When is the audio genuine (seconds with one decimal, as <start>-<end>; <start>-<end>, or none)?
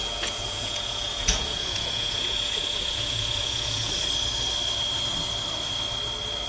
3.9-6.5